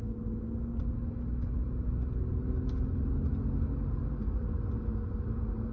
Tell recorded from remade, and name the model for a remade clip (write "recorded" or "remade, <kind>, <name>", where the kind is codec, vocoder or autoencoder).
recorded